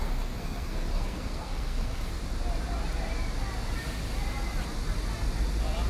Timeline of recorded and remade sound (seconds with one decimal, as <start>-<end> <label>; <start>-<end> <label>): 0.0-2.2 remade; 2.2-5.9 recorded